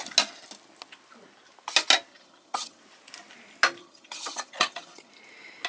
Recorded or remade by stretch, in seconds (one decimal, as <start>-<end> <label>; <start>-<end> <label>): 0.0-2.1 recorded; 2.1-2.8 remade; 2.8-3.8 recorded; 3.8-5.1 remade; 5.1-5.7 recorded